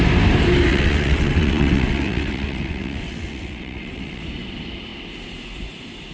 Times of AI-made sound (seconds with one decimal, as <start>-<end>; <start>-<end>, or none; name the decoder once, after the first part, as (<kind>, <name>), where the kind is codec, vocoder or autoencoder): 0.7-4.2 (vocoder, WaveNeXt)